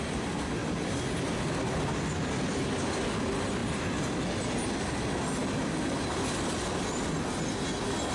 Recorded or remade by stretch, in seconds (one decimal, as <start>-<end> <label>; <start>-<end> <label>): 0.0-8.1 recorded